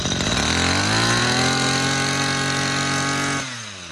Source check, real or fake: real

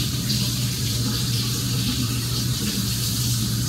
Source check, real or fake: fake